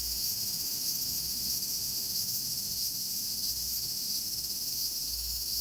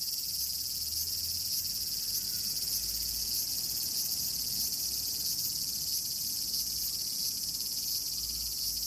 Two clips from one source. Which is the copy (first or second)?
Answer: first